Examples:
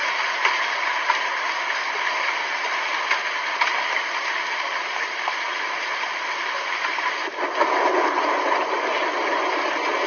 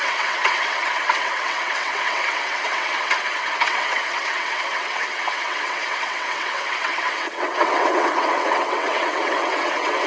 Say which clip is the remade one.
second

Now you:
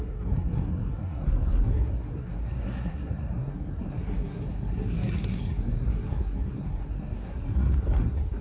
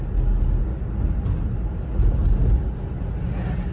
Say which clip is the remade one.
first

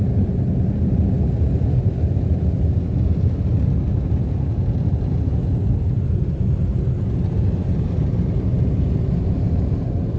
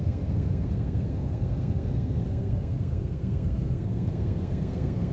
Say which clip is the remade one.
second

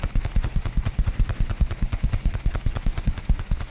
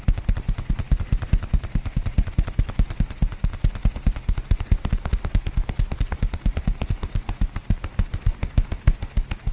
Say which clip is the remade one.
first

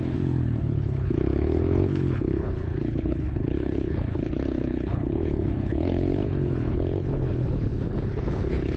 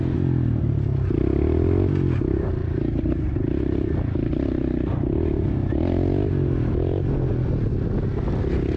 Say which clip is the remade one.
first